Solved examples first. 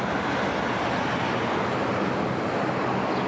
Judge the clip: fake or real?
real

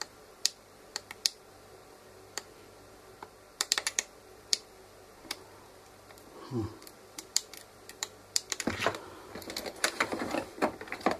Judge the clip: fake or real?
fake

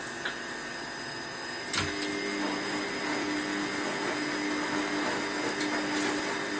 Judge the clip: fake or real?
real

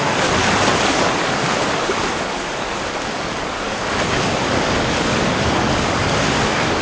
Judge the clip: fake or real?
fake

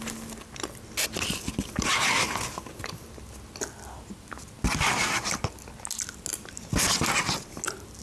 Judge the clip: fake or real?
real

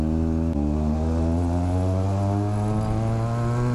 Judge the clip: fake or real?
real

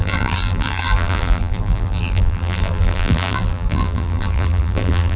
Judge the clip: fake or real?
fake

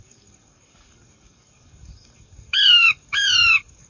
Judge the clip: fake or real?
fake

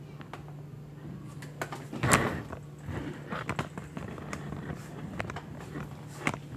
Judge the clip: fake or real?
real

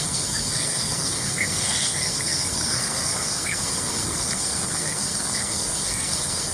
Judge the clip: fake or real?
fake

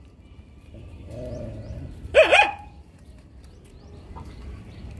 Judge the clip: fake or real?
fake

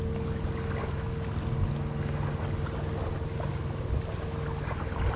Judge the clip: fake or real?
real